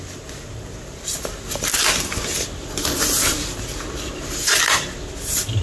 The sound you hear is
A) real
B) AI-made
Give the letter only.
A